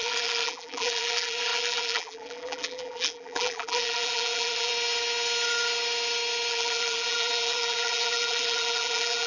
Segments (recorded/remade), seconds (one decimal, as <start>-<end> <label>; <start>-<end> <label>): 0.0-4.7 remade; 4.7-6.5 recorded; 6.5-9.3 remade